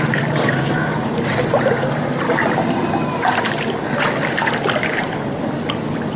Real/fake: fake